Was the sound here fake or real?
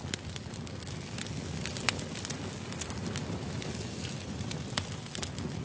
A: real